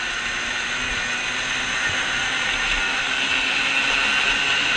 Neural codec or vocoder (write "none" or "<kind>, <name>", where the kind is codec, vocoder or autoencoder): none